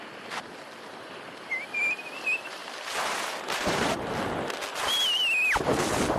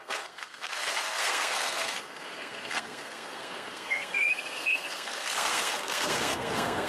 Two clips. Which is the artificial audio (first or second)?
second